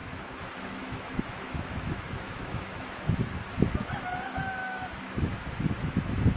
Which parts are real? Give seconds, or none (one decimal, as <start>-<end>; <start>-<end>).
3.2-4.6; 6.0-6.4